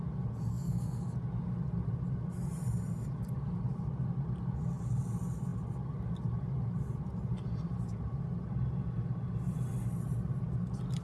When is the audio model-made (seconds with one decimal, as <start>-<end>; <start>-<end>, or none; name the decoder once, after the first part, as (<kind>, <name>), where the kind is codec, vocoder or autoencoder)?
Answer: 0.5-1.0 (codec, SNAC)